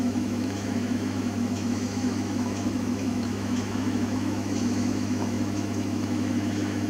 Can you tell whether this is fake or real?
fake